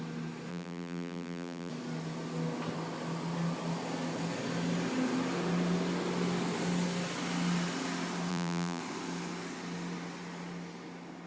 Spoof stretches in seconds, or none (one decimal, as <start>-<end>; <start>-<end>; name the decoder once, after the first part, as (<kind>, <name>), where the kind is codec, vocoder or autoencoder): 0.5-1.7 (vocoder, BigVGAN v2); 8.3-8.8